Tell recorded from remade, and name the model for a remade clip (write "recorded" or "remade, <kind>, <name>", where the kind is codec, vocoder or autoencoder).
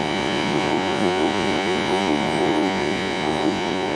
remade, vocoder, Vocos